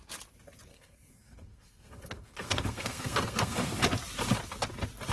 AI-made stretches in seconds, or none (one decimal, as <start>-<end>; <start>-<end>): 0.7-3.8